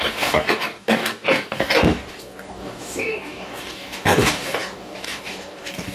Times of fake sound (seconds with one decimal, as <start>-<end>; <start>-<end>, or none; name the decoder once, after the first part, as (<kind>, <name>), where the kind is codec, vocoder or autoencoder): 0.0-5.9 (codec, DAC)